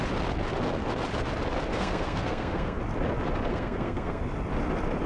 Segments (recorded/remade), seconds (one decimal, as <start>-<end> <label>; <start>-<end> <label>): 0.0-1.7 recorded; 1.7-2.8 remade; 2.8-3.5 recorded; 3.5-4.2 remade; 4.2-5.1 recorded